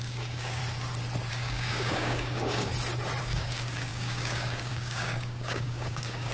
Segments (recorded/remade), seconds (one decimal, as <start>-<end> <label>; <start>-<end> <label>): 0.0-0.6 remade; 0.6-1.3 recorded; 1.3-2.7 remade; 2.7-3.2 recorded; 3.2-6.3 remade